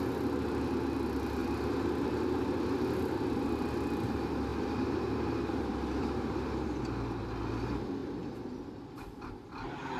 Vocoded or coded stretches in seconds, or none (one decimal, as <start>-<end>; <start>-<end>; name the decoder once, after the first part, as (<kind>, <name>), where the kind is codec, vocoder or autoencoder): 1.4-3.7 (vocoder, BigVGAN v2); 4.5-6.8; 8.0-9.2